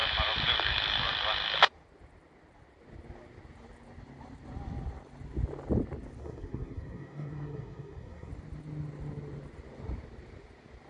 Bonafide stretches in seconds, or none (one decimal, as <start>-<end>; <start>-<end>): 0.0-6.2; 8.3-10.9